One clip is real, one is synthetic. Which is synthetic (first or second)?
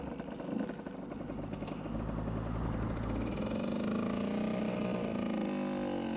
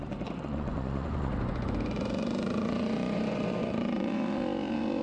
second